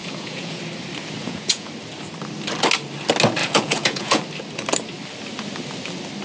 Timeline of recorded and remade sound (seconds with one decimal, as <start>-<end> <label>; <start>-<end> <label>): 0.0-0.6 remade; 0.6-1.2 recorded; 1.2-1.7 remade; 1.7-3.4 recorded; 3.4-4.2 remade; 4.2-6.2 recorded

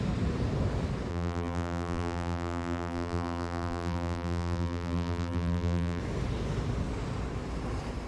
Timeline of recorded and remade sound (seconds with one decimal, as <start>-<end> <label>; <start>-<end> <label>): 0.0-1.1 recorded; 1.1-6.0 remade; 6.0-8.1 recorded

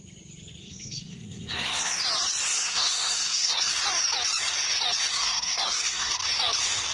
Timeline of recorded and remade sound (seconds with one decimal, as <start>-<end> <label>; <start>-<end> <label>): 0.0-0.6 recorded; 0.6-2.0 remade; 2.0-2.5 recorded; 2.5-3.7 remade; 3.7-5.1 recorded; 5.1-6.1 remade; 6.1-6.9 recorded

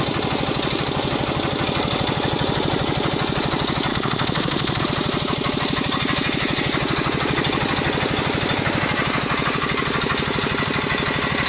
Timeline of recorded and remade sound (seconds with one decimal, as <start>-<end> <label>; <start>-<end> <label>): 0.0-3.9 recorded; 3.9-4.8 remade; 4.8-11.5 recorded